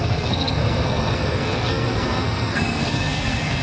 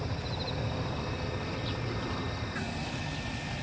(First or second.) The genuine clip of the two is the second